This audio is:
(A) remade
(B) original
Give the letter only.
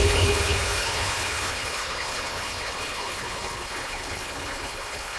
A